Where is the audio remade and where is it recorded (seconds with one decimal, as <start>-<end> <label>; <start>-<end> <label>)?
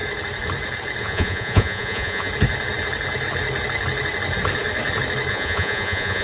0.0-1.0 recorded; 1.0-2.3 remade; 2.3-5.3 recorded; 5.3-6.2 remade